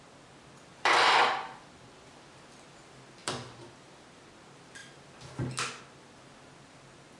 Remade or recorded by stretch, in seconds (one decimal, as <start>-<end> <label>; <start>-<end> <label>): 0.0-0.7 recorded; 0.7-2.8 remade; 2.8-3.2 recorded; 3.2-4.3 remade; 4.3-7.2 recorded